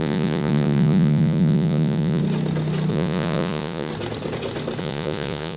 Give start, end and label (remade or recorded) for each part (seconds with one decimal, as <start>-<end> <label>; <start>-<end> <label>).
0.0-2.2 remade; 2.2-2.9 recorded; 2.9-3.9 remade; 3.9-4.8 recorded; 4.8-5.6 remade